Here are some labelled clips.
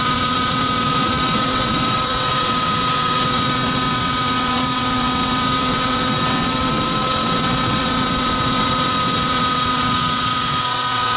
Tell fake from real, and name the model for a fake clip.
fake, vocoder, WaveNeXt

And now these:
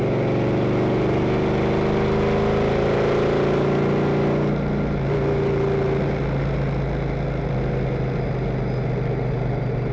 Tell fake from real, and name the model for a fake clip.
real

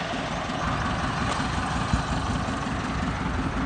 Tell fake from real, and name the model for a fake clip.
real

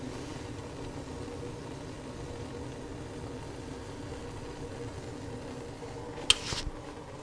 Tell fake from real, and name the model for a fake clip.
real